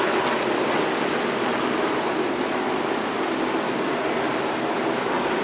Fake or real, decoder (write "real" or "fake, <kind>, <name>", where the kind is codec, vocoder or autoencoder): real